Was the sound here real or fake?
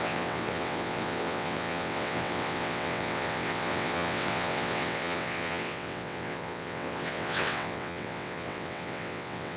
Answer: fake